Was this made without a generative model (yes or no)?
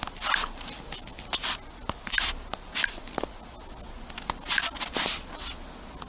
yes